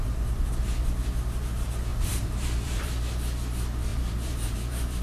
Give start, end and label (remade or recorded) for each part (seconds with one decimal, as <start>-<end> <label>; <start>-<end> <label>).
0.0-0.5 remade; 0.5-1.9 recorded; 1.9-2.9 remade; 2.9-3.9 recorded; 3.9-5.0 remade